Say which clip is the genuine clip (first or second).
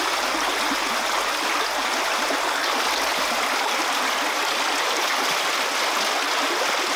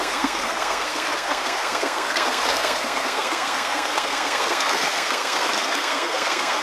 first